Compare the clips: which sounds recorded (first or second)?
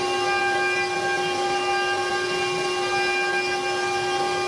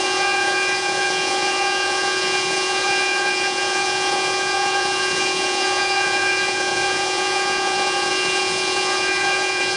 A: first